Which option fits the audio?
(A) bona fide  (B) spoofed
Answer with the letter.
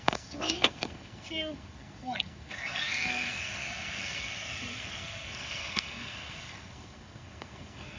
B